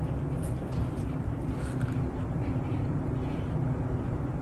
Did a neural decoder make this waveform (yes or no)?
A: no